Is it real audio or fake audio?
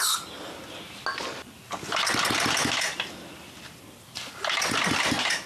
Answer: real